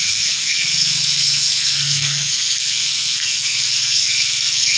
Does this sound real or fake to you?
fake